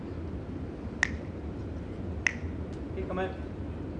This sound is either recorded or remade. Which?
recorded